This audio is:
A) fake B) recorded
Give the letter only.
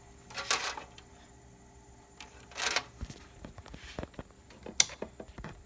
B